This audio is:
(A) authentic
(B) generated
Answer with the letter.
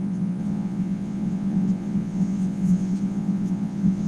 B